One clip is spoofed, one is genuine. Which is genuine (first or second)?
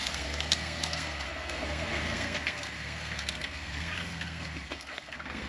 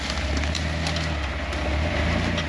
second